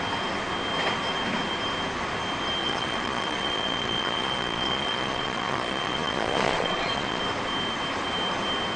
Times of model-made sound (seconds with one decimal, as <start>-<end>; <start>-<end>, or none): 2.6-7.2